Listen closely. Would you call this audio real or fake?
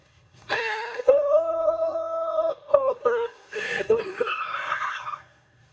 fake